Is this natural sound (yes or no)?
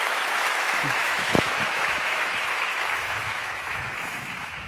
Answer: no